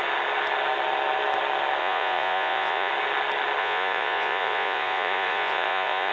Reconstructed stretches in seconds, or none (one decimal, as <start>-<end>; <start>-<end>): 1.8-2.9; 3.6-6.1